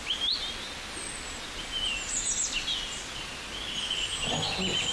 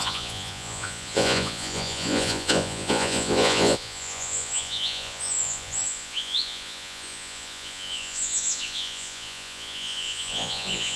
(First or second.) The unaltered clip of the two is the first